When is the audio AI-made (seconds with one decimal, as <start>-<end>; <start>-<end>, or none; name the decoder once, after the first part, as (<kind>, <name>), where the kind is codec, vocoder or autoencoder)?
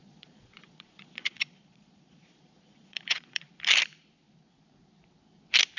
0.0-3.5 (vocoder, Vocos)